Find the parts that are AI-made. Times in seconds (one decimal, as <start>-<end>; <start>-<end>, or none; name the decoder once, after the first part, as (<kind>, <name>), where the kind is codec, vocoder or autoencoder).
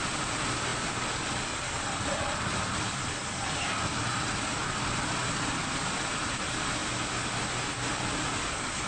0.7-3.0 (vocoder, BigVGAN v2)